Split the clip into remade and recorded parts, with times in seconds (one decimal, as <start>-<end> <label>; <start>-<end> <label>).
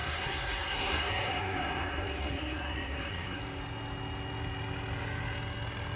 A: 0.0-3.4 remade; 3.4-6.0 recorded